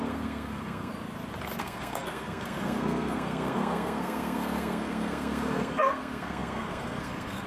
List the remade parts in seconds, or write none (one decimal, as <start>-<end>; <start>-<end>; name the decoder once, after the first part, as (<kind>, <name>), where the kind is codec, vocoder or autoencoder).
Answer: 0.0-0.9 (codec, SNAC); 1.6-7.5